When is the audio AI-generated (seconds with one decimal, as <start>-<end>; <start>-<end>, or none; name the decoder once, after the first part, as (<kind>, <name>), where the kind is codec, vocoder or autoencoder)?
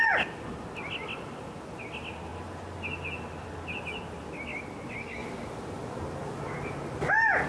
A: none